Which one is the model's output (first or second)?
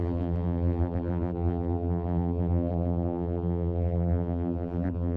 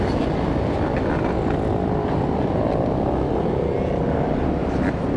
first